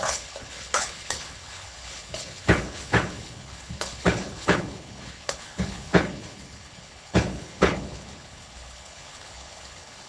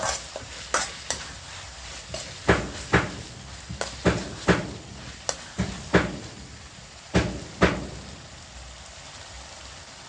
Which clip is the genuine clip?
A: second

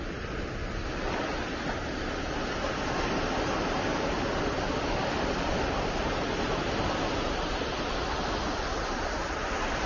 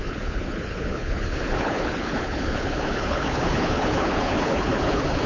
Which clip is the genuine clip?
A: first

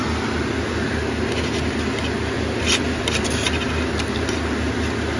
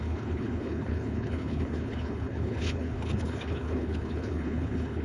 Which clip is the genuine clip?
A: first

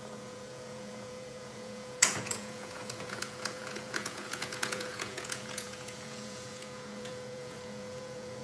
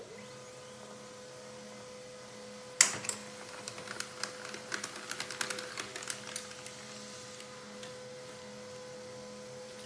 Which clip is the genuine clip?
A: second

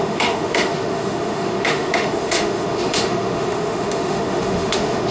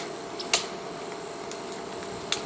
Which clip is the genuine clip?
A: second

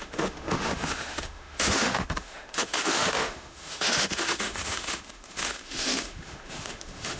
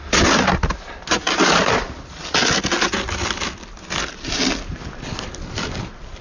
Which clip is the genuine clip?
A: second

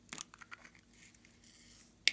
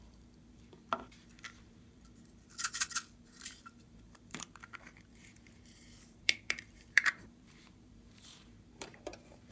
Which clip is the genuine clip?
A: first